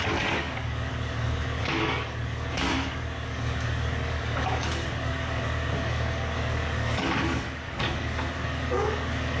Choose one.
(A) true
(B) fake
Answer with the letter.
B